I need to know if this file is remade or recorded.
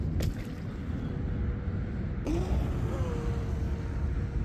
recorded